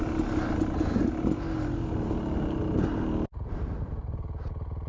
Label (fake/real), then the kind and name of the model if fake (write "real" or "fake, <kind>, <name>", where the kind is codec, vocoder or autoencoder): real